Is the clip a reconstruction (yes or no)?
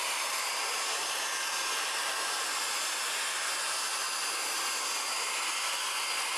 no